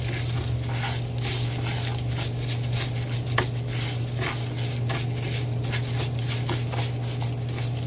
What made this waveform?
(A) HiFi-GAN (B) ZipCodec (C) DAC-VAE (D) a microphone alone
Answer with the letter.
D